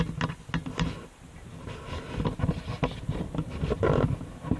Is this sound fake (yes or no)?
no